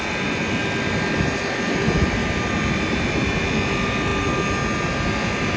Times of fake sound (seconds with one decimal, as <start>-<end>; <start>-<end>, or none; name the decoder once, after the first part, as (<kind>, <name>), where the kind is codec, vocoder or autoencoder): none

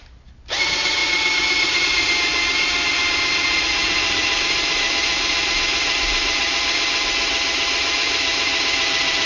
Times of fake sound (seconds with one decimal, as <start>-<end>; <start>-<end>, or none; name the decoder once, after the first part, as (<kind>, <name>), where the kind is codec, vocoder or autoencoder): none

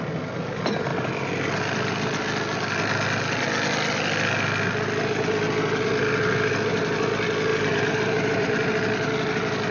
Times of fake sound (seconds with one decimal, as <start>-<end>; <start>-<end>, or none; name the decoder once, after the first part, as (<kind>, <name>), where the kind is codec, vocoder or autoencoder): 7.5-8.6 (vocoder, BigVGAN v2)